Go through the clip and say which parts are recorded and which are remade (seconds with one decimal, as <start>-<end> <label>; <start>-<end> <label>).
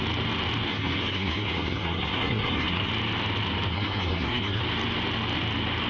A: 0.0-0.7 recorded; 0.7-2.9 remade; 2.9-3.7 recorded; 3.7-4.6 remade; 4.6-5.9 recorded